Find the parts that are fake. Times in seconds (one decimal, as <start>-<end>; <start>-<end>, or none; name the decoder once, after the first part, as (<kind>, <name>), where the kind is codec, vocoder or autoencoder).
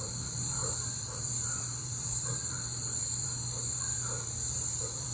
0.0-5.1 (vocoder, BigVGAN v2)